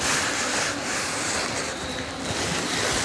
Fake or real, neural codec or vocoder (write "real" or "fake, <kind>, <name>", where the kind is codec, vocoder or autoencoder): real